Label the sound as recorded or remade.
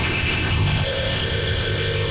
remade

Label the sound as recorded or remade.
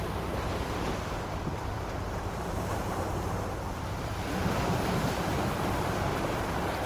remade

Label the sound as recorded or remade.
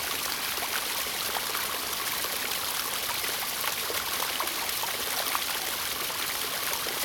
recorded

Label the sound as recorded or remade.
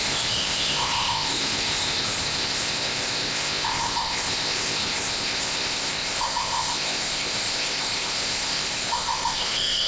remade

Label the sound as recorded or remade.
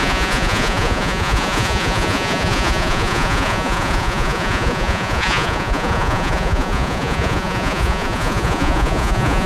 remade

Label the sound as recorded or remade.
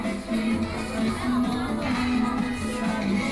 recorded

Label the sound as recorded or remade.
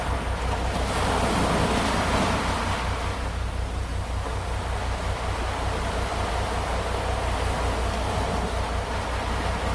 recorded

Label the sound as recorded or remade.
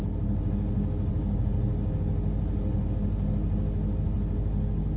recorded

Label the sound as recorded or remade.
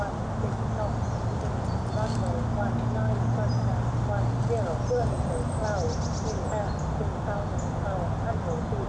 recorded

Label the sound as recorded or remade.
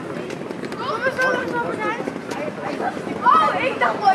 recorded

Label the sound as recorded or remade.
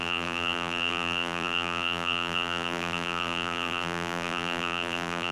remade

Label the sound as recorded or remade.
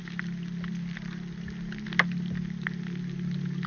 recorded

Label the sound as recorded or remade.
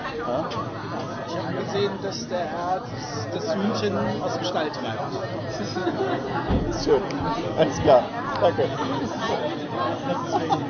recorded